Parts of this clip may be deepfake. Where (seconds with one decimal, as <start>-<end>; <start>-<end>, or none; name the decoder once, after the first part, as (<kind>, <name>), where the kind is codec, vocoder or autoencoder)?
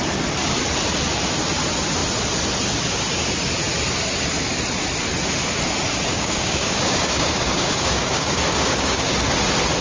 6.1-9.1 (codec, DAC)